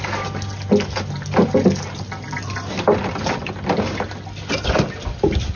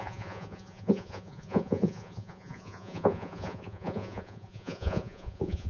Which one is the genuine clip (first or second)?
first